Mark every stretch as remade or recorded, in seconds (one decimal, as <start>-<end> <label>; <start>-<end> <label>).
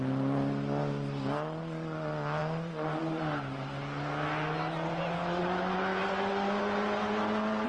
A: 0.0-7.7 recorded